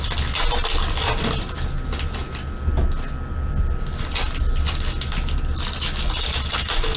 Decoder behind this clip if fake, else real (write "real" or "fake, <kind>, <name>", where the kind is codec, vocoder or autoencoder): real